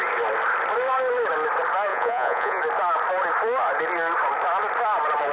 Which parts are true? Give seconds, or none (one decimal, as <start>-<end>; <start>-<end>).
0.0-1.9; 2.6-5.3